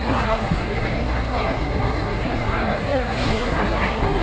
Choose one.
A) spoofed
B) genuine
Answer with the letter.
A